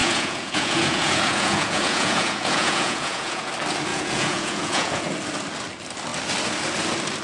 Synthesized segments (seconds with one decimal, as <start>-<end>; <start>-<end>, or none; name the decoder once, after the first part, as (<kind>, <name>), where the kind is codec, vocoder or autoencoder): 0.0-3.5 (vocoder, Vocos); 3.9-5.0